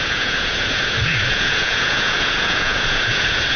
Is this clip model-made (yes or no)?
yes